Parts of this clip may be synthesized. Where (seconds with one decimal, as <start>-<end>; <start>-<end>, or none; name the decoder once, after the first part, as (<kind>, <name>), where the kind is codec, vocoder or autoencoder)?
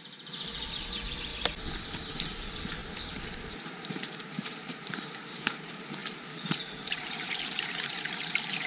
0.0-1.3 (vocoder, BigVGAN v2); 1.8-8.7